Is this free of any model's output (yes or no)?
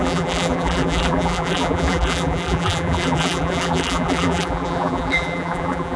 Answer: no